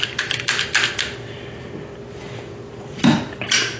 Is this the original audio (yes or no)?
yes